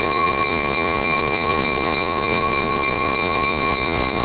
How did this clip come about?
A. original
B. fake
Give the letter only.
B